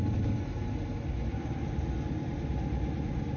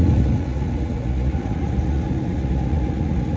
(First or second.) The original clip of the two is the first